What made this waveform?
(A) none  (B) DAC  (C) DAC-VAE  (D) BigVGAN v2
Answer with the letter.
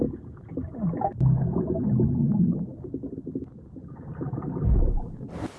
A